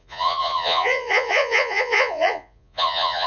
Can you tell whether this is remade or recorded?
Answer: remade